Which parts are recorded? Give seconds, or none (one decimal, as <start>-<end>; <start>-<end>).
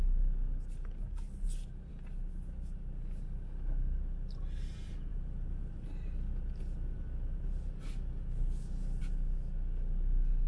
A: 0.0-10.5